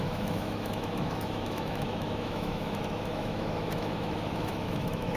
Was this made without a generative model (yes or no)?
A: no